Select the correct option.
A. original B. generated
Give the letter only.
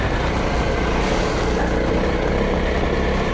A